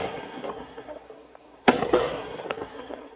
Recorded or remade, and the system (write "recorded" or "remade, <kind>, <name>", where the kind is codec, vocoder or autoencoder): remade, codec, SNAC